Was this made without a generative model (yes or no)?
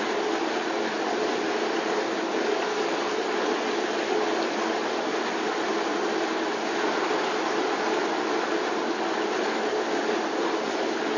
yes